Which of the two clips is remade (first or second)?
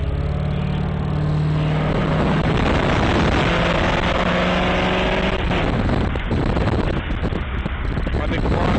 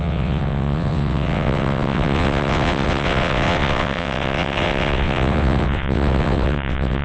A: second